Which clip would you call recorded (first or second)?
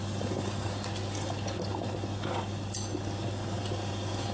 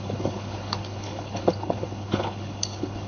first